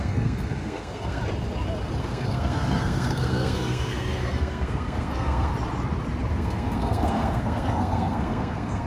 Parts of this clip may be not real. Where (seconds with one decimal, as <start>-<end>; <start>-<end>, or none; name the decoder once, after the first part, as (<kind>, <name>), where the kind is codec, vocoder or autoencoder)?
0.0-1.2 (codec, SNAC); 2.0-5.5; 6.3-8.9